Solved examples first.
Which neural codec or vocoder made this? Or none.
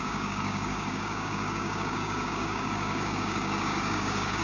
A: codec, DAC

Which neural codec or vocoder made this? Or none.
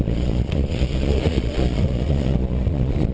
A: vocoder, Vocos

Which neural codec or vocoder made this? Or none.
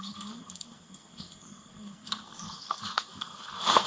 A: codec, SNAC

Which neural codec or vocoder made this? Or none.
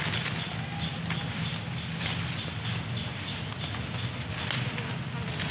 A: none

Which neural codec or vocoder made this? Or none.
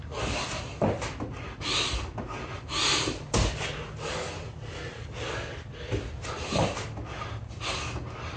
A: none